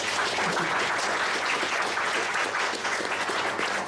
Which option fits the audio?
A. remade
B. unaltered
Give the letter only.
A